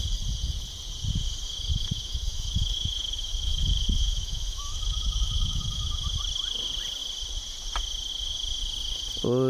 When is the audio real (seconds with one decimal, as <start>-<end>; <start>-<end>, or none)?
0.0-1.7; 5.9-9.5